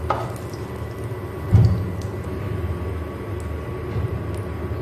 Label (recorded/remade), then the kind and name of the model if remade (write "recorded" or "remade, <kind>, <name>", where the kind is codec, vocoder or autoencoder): recorded